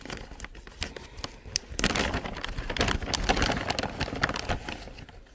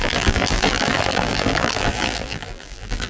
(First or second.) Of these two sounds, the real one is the first